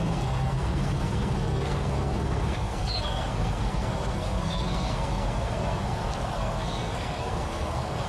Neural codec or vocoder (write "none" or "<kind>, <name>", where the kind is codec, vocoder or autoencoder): codec, SNAC